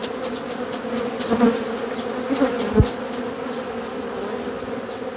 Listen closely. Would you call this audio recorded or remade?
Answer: recorded